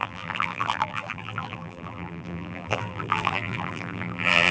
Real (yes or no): no